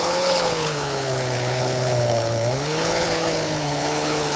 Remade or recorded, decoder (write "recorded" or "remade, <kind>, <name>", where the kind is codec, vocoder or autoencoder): remade, codec, HILCodec